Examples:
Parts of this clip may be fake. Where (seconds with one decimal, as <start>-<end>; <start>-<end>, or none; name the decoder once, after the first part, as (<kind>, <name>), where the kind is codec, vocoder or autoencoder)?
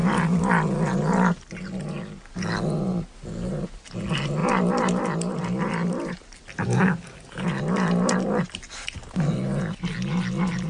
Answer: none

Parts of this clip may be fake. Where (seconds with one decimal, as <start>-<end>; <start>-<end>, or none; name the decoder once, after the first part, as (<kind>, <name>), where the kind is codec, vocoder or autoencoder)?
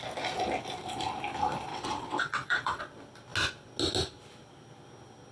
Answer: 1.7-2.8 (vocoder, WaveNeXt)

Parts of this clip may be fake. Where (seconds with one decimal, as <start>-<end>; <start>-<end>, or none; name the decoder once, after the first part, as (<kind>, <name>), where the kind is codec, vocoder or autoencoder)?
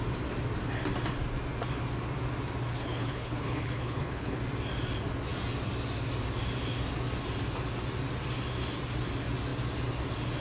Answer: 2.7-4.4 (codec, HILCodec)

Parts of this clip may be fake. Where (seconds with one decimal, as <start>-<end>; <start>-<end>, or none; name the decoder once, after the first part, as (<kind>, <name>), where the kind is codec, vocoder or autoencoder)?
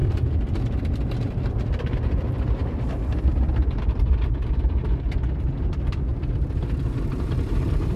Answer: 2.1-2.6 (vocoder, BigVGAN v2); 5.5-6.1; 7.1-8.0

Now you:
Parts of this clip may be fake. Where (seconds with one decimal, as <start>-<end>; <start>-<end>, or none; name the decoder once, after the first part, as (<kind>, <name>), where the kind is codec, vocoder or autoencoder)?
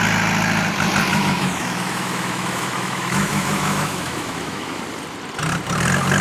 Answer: 1.1-4.8 (autoencoder, DAC-VAE)